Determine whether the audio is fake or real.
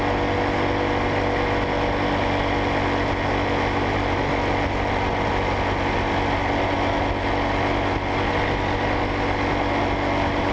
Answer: real